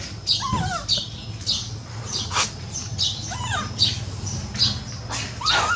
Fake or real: real